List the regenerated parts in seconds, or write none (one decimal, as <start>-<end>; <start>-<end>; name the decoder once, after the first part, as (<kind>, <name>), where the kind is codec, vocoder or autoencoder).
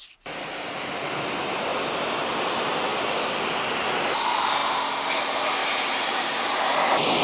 5.6-6.6 (vocoder, BigVGAN v2)